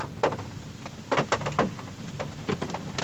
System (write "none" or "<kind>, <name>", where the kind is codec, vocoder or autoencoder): none